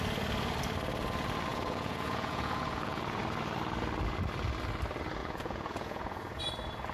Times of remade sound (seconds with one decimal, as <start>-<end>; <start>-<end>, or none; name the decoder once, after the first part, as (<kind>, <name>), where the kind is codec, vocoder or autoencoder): 1.5-3.2 (vocoder, Vocos); 5.2-6.4